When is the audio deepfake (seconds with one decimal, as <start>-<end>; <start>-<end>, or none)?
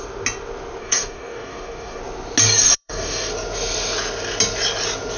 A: 0.8-2.0; 2.6-3.3